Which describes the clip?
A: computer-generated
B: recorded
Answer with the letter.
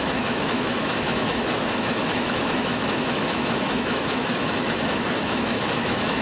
A